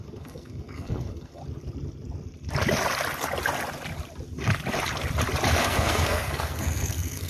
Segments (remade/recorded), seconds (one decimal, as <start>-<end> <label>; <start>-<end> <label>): 0.0-1.4 remade; 1.4-5.6 recorded; 5.6-7.3 remade